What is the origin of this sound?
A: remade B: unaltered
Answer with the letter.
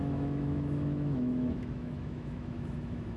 A